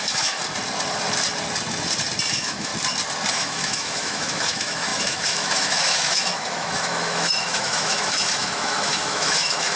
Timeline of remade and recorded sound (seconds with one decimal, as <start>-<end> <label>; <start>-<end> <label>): 0.0-0.4 remade; 0.4-2.3 recorded; 2.3-2.7 remade; 2.7-3.3 recorded; 3.3-9.8 remade